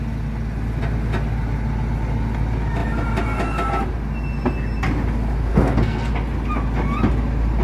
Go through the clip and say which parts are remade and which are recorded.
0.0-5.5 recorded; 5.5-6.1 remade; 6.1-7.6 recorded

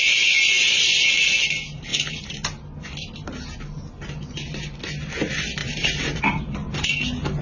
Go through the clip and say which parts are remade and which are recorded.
0.0-5.6 recorded; 5.6-6.2 remade; 6.2-7.4 recorded

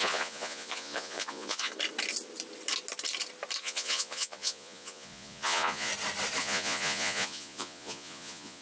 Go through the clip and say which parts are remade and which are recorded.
0.0-1.7 remade; 1.7-3.6 recorded; 3.6-5.9 remade; 5.9-6.4 recorded; 6.4-8.6 remade

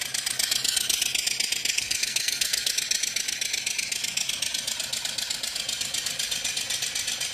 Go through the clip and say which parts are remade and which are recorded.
0.0-1.7 recorded; 1.7-2.7 remade; 2.7-7.3 recorded

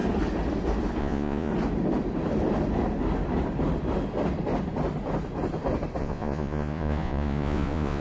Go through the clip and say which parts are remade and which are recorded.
0.0-1.0 recorded; 1.0-1.5 remade; 1.5-6.0 recorded; 6.0-8.0 remade

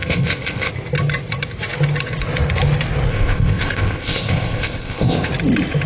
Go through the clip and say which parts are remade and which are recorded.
0.0-0.7 remade; 0.7-3.1 recorded; 3.1-5.3 remade; 5.3-5.9 recorded

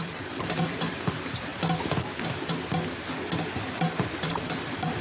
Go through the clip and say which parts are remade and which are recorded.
0.0-1.5 remade; 1.5-4.1 recorded; 4.1-5.0 remade